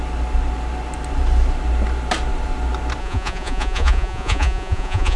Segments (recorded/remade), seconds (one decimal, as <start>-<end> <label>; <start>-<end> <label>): 0.0-3.0 recorded; 3.0-5.2 remade

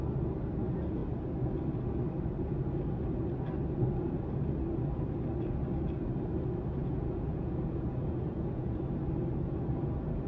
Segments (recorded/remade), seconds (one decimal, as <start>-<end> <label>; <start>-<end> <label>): 0.0-6.8 recorded; 6.8-8.8 remade; 8.8-10.3 recorded

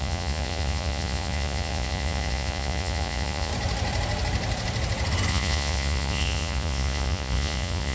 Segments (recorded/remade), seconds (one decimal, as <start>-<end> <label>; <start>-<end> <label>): 0.0-3.5 remade; 3.5-5.3 recorded; 5.3-7.9 remade

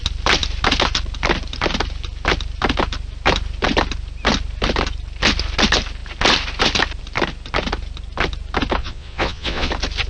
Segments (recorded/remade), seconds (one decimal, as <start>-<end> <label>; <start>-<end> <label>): 0.0-8.8 recorded; 8.8-9.7 remade; 9.7-10.1 recorded